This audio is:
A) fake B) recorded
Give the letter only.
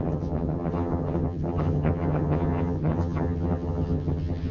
A